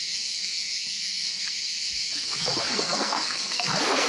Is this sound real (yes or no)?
no